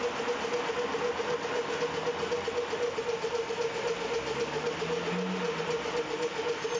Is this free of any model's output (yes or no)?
yes